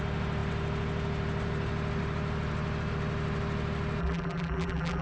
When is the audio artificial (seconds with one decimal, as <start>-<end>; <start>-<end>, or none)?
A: 4.0-5.0